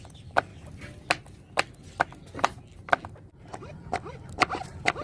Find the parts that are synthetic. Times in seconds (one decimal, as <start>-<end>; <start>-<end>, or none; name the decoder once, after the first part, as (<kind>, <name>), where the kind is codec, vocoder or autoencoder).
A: 0.0-0.5 (vocoder, BigVGAN v2); 3.1-5.0